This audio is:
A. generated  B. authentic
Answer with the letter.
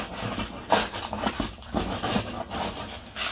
B